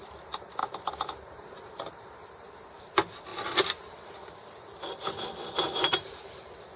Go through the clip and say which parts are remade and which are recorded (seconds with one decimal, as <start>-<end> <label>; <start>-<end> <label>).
0.0-6.8 recorded